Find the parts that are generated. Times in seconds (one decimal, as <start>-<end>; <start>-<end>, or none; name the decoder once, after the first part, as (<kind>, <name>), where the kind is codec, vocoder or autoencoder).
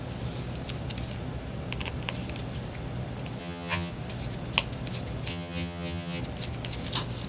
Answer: 3.4-3.9 (vocoder, HiFi-GAN); 5.3-6.2